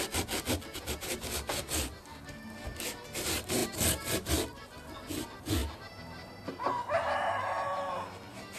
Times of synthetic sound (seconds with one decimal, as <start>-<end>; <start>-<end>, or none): none